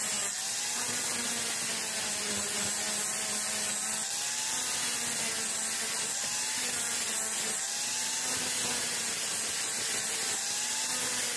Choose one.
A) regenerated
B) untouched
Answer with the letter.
B